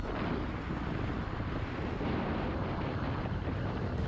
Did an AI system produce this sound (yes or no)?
no